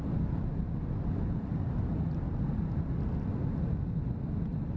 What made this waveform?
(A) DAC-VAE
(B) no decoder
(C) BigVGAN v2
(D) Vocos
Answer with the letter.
B